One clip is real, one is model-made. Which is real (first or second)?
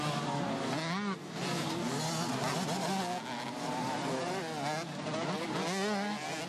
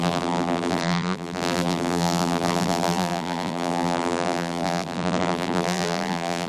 first